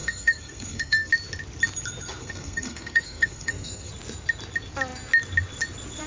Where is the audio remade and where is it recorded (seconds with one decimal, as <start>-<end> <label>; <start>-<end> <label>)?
0.0-1.1 remade; 1.1-2.2 recorded; 2.2-3.9 remade; 3.9-6.1 recorded